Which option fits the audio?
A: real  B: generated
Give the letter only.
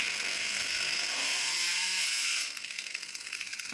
B